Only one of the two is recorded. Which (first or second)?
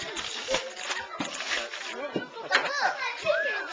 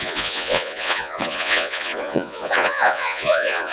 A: first